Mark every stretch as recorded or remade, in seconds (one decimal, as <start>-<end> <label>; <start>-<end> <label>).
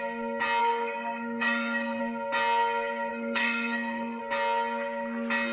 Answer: 0.0-0.6 recorded; 0.6-2.0 remade; 2.0-3.1 recorded; 3.1-4.2 remade; 4.2-5.5 recorded